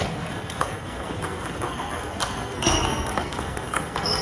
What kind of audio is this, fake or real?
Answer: fake